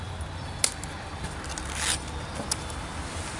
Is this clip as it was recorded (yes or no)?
yes